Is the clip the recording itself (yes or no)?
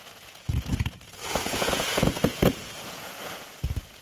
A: no